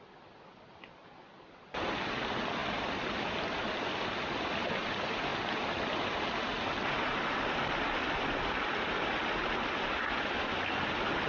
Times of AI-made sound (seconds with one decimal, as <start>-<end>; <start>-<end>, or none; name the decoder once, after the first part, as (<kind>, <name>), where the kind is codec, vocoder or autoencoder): none